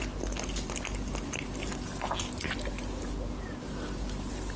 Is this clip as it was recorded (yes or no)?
yes